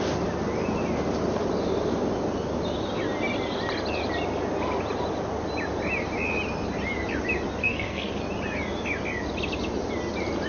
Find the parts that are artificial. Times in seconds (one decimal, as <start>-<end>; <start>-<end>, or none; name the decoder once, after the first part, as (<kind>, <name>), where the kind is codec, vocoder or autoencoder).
7.6-8.1 (codec, SNAC)